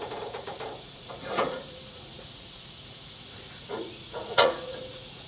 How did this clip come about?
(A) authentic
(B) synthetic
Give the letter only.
B